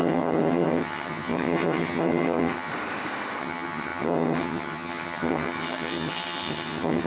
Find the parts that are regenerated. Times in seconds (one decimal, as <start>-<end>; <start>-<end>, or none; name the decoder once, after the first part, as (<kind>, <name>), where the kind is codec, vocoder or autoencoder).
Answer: 0.0-2.7 (vocoder, HiFi-GAN); 3.4-7.1